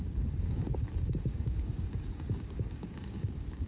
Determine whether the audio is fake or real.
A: fake